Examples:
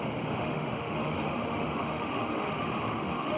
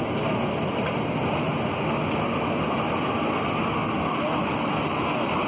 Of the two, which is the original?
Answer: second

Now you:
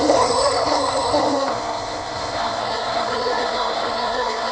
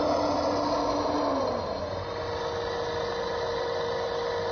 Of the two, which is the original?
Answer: second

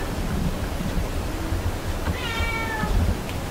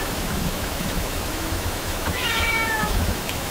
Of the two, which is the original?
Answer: first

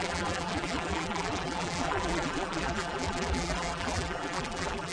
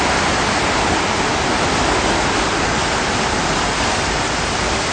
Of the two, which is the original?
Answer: second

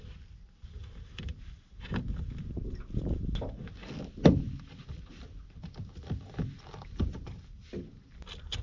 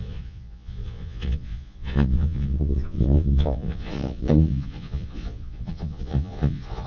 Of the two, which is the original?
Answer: first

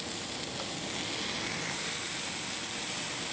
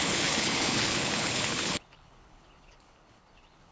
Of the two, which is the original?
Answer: first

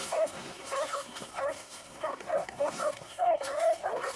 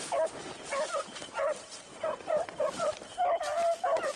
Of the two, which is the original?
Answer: second